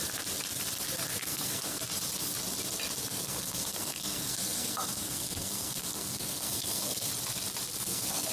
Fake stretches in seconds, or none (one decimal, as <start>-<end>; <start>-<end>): 1.2-1.8; 3.0-7.1; 7.8-8.3